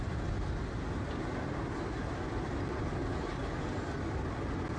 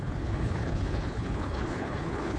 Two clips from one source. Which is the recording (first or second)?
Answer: first